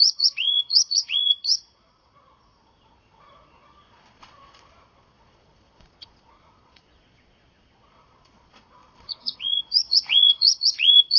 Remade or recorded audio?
remade